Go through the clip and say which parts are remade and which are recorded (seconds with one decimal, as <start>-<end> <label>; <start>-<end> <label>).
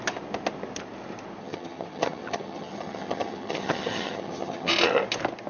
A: 0.0-1.4 recorded; 1.4-4.7 remade; 4.7-5.5 recorded